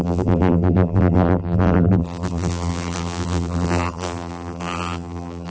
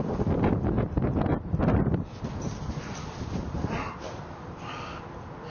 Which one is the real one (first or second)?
second